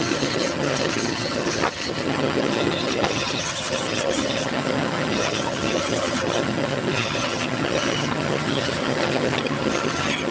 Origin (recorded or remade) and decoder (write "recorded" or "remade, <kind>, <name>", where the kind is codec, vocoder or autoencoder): remade, vocoder, HiFi-GAN